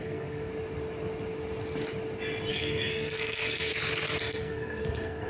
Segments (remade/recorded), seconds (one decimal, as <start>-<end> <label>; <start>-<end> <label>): 0.0-0.5 remade; 0.5-2.5 recorded; 2.5-3.7 remade; 3.7-4.2 recorded; 4.2-5.3 remade